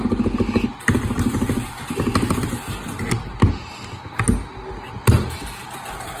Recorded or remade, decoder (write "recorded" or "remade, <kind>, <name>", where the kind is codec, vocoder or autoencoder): recorded